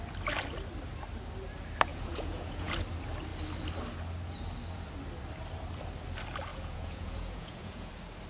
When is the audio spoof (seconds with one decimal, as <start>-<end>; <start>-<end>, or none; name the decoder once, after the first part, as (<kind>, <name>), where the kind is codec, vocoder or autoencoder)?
1.9-2.7 (vocoder, Vocos); 6.5-7.9